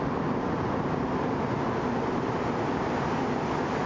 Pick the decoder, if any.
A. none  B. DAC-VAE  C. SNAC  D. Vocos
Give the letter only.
A